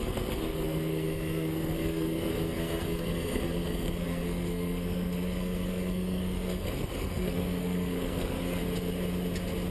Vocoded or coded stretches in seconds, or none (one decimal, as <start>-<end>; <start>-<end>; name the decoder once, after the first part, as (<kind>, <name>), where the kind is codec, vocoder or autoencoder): 0.0-8.6 (codec, SNAC)